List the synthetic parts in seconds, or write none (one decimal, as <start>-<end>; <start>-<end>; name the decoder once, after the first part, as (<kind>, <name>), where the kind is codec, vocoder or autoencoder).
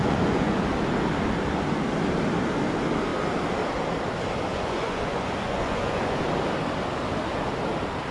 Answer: 0.0-0.6 (vocoder, Vocos); 4.5-6.2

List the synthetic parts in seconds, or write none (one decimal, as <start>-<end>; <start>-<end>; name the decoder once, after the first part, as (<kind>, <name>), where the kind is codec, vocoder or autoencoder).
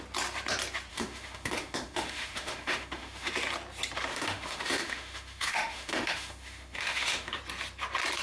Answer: 0.9-3.3 (autoencoder, DAC-VAE); 4.1-7.4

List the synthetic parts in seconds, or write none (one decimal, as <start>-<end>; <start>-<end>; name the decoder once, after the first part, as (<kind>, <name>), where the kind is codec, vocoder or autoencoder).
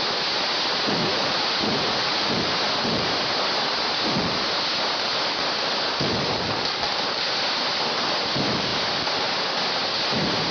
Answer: 1.0-2.3 (vocoder, Vocos)